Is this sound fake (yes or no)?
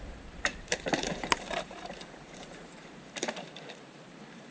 yes